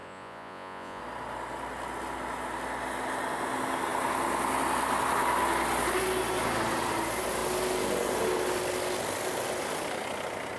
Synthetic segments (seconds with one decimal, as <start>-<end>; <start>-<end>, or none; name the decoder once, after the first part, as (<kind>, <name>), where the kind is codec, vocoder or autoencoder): 0.0-1.0 (vocoder, Vocos)